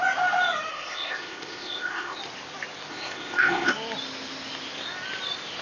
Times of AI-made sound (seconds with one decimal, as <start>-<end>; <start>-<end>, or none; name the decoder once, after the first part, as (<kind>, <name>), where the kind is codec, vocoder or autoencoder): 0.7-2.2 (codec, ZipCodec); 2.9-3.7